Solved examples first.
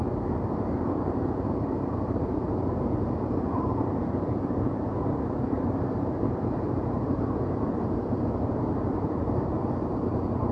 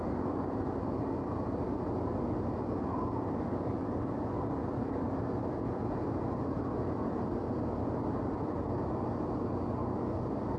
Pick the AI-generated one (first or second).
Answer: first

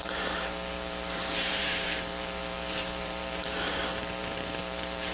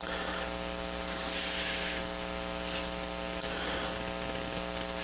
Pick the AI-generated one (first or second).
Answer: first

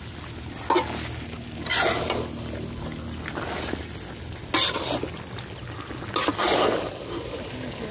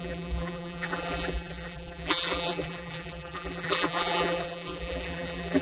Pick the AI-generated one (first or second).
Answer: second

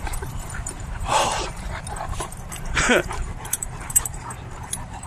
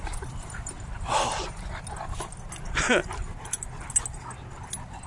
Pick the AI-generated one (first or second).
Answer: first